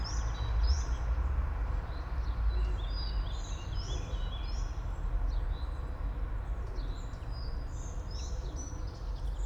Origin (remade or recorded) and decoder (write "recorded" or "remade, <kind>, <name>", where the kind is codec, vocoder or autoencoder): recorded